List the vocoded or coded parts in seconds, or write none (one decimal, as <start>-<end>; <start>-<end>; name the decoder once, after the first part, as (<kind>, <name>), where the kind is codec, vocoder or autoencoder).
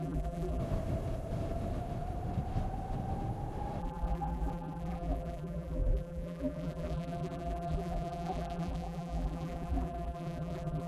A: 0.0-0.6 (vocoder, BigVGAN v2); 3.8-10.9